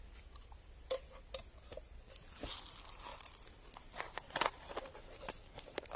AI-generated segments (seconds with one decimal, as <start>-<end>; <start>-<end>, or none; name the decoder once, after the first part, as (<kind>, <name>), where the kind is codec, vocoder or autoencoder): none